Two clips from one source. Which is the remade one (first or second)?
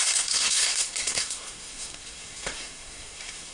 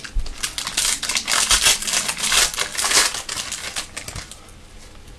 first